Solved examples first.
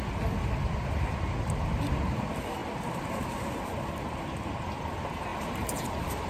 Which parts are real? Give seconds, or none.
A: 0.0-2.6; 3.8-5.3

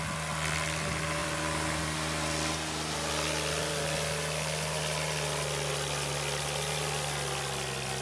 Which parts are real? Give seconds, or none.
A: 0.0-1.2; 1.8-8.0